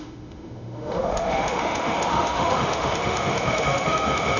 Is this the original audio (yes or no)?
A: no